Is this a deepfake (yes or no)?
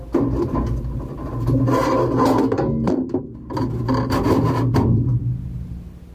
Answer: no